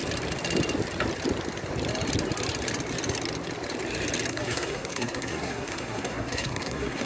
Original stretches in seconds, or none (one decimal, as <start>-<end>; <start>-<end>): 0.0-4.3